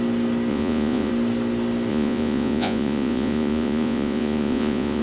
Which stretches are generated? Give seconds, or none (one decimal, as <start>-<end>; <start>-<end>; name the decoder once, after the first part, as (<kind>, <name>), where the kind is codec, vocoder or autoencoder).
0.5-1.1 (vocoder, Vocos); 1.9-5.0